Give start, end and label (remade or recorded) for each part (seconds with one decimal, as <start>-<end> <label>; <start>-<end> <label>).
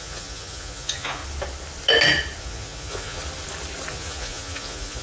0.0-1.2 remade; 1.2-2.4 recorded; 2.4-3.2 remade; 3.2-3.9 recorded; 3.9-5.0 remade